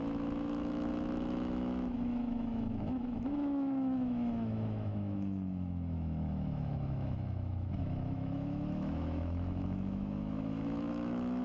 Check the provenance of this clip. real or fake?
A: fake